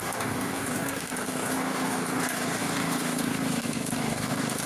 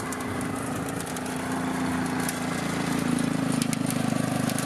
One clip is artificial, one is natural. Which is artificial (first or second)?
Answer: first